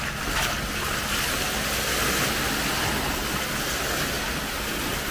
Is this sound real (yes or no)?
yes